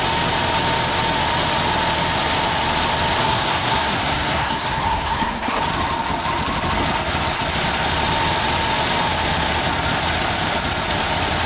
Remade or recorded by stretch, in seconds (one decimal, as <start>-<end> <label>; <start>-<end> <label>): 0.0-3.2 recorded; 3.2-5.6 remade; 5.6-11.5 recorded